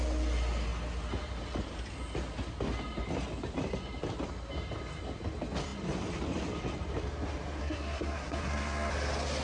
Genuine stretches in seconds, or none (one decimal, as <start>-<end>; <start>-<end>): 0.0-7.6; 8.9-9.4